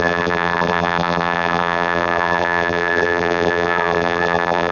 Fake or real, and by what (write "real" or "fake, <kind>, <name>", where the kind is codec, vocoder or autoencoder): fake, vocoder, BigVGAN v2